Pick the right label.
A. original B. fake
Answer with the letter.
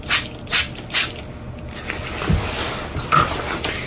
A